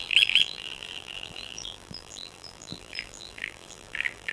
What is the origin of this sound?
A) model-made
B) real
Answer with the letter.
A